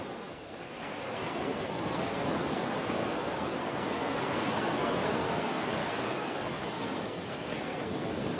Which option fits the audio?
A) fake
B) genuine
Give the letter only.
A